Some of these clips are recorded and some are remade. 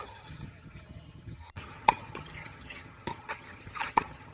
remade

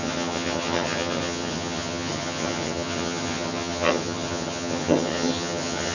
remade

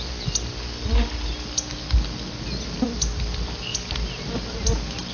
recorded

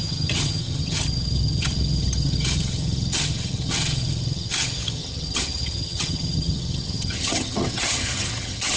remade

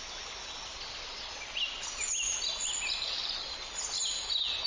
recorded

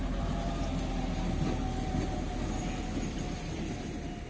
recorded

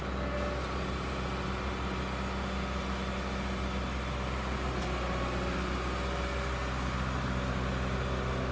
recorded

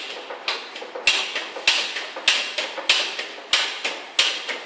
recorded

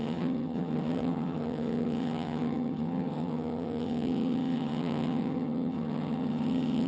remade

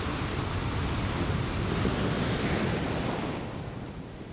recorded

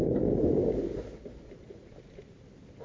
recorded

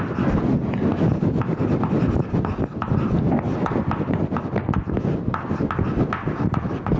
recorded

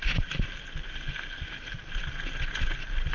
recorded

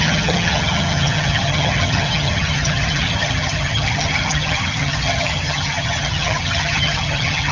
remade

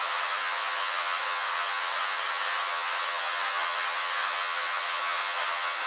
remade